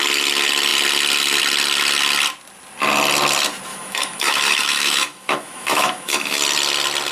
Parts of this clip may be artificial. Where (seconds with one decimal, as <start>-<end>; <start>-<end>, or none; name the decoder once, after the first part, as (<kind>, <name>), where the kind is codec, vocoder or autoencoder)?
3.7-6.4 (autoencoder, DAC-VAE)

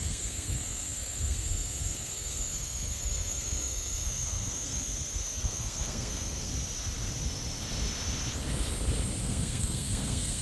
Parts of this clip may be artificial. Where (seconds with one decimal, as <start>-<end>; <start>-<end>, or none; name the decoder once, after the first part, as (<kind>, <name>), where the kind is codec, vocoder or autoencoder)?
0.0-6.5 (codec, SNAC); 9.2-10.4

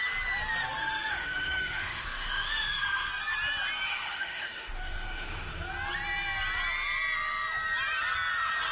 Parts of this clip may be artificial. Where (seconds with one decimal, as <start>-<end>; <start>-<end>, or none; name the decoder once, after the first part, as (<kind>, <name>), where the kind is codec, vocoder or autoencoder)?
0.8-3.1 (autoencoder, DAC-VAE); 3.9-5.5